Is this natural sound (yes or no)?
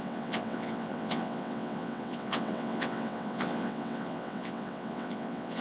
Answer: no